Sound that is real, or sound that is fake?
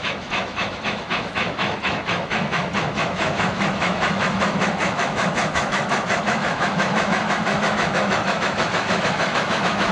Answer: fake